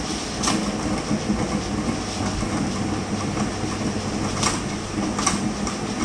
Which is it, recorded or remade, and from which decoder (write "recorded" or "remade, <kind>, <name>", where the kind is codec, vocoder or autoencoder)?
recorded